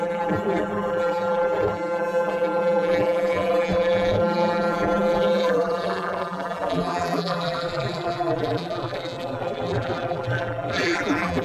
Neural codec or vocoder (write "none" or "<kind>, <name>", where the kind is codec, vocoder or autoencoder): vocoder, BigVGAN v2